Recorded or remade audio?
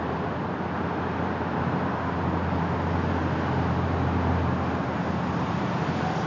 recorded